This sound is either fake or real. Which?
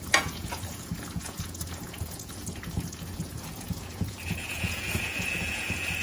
fake